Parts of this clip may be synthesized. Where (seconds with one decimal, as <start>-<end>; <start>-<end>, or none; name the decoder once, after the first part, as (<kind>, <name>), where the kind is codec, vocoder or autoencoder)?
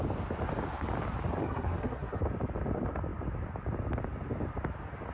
1.4-2.2 (codec, SNAC)